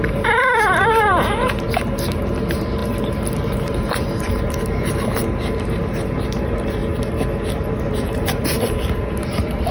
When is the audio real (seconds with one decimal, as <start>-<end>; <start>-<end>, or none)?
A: 6.8-7.8